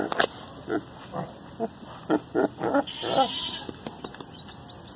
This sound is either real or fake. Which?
real